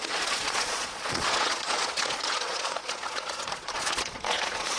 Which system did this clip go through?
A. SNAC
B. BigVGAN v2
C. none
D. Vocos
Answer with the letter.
D